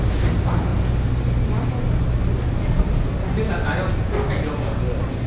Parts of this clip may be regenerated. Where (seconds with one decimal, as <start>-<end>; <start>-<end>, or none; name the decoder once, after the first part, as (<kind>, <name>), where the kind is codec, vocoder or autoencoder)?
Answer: none